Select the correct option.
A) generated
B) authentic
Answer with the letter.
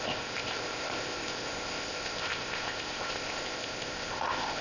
A